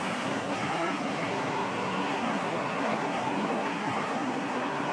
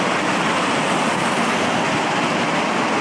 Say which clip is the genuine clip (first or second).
second